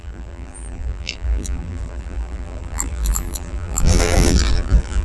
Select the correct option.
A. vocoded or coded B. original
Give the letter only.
A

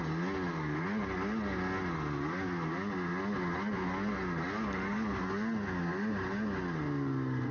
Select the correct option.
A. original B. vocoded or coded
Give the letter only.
A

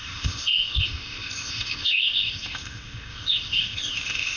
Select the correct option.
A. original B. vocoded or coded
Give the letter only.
B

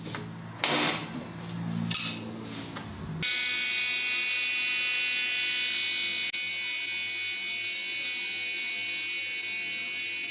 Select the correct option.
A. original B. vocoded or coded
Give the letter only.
A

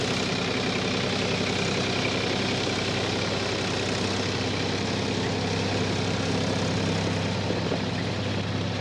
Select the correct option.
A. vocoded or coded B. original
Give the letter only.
B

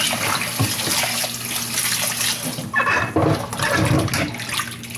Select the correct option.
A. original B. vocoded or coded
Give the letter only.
A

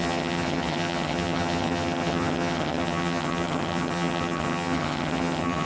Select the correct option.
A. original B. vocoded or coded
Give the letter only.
B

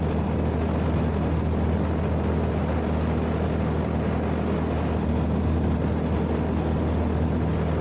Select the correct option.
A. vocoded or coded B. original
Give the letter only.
B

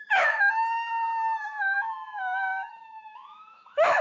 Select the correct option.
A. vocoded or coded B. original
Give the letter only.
A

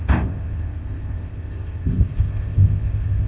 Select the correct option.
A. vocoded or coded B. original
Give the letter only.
A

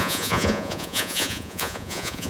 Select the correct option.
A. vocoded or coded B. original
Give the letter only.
A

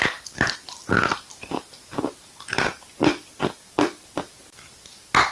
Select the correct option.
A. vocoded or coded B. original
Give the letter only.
B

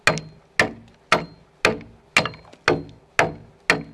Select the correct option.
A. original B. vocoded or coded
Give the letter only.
A